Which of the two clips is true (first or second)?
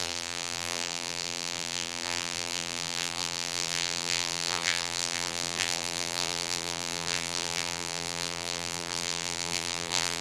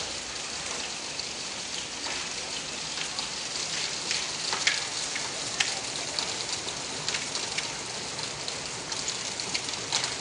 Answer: second